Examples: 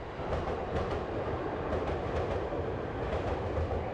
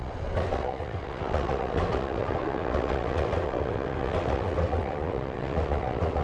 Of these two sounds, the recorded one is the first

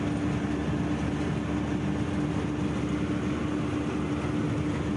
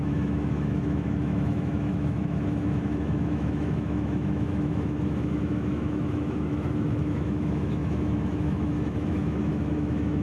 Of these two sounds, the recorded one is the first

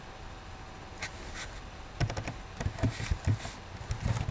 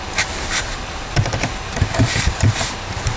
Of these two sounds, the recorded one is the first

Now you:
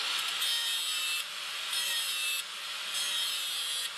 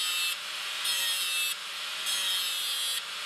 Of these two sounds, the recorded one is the second